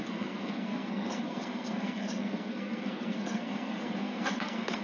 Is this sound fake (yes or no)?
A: yes